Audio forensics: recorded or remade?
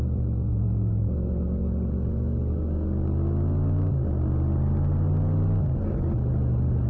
recorded